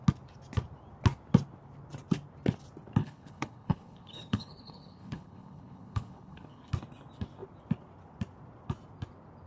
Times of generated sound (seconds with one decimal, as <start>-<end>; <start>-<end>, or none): 3.0-6.7